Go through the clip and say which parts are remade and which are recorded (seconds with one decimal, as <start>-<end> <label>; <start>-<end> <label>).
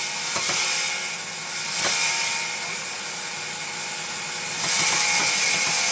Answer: 0.0-5.9 recorded